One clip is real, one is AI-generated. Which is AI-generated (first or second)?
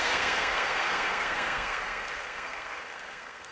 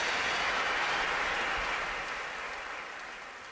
first